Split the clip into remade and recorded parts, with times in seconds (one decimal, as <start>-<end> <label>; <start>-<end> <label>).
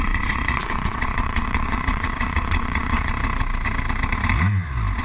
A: 0.0-3.1 remade; 3.1-5.0 recorded